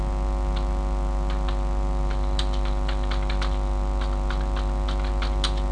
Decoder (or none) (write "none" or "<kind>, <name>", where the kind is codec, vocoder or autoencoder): none